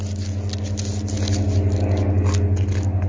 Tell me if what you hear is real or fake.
real